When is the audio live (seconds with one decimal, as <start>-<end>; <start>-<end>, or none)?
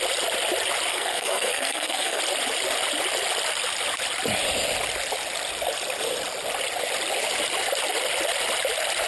0.0-0.9; 2.2-9.1